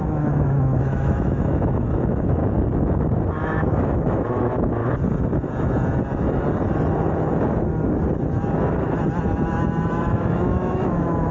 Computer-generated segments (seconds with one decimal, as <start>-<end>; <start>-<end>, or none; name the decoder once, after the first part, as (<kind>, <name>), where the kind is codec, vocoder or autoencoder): 0.0-2.4 (autoencoder, DAC-VAE); 3.4-4.8; 9.9-11.3